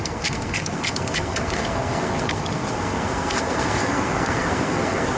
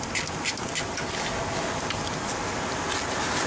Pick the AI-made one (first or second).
first